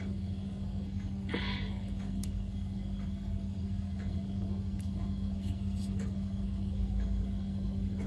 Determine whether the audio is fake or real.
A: fake